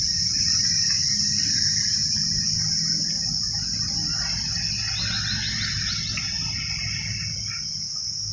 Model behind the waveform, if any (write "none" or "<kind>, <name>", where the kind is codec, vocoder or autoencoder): none